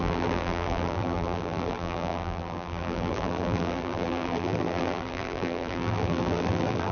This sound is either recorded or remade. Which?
remade